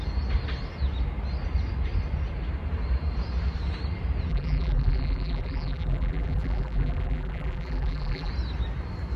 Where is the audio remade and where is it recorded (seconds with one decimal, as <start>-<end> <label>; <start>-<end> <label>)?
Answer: 0.0-4.3 recorded; 4.3-8.3 remade; 8.3-9.2 recorded